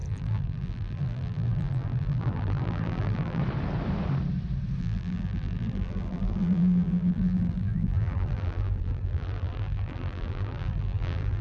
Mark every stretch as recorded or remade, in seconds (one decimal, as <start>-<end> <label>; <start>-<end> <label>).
0.0-3.4 remade; 3.4-4.8 recorded; 4.8-11.4 remade